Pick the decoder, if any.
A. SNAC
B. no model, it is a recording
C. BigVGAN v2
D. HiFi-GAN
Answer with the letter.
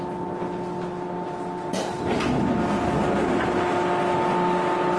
B